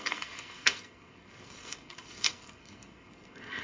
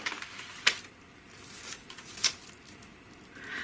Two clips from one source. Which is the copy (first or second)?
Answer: first